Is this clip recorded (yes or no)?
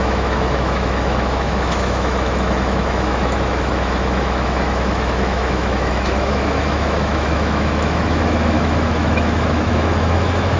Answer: no